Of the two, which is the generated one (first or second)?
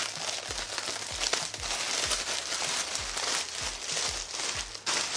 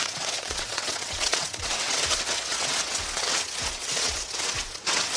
second